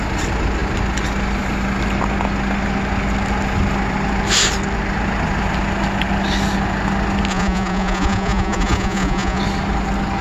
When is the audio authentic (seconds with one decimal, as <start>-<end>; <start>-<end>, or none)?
0.0-7.3; 9.4-10.2